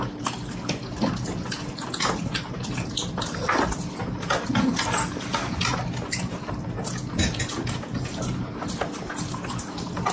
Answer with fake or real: real